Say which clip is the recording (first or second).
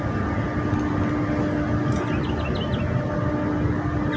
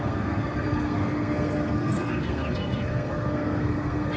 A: first